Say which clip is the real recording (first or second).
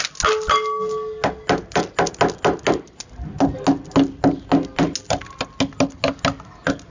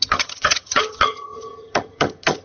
first